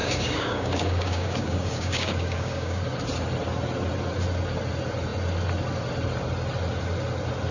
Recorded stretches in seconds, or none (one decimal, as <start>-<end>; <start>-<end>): 2.8-7.5